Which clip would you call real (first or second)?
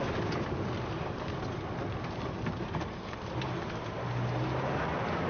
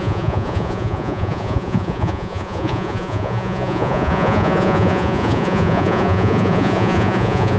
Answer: first